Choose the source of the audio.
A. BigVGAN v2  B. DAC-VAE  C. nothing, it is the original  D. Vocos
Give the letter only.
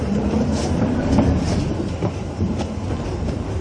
A